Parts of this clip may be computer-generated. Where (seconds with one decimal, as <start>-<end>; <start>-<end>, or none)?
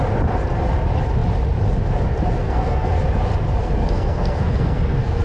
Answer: 2.4-2.9; 3.6-5.2